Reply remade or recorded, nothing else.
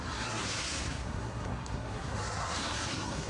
remade